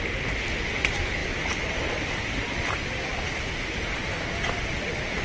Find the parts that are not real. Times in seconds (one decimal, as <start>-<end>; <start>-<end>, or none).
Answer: none